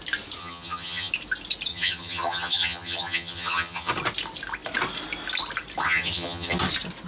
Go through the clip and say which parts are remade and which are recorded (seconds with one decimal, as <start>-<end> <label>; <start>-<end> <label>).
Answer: 0.0-0.4 recorded; 0.4-1.1 remade; 1.1-1.7 recorded; 1.7-3.9 remade; 3.9-5.8 recorded; 5.8-6.6 remade; 6.6-7.1 recorded